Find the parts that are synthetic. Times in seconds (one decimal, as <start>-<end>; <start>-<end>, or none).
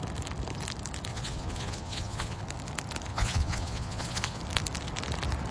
1.1-2.4; 3.1-4.4